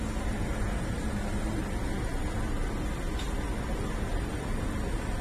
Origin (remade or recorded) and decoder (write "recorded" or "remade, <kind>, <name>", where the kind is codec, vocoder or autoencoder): recorded